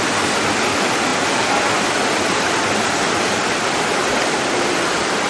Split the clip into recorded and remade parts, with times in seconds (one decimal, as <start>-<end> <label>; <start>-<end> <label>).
0.0-5.3 recorded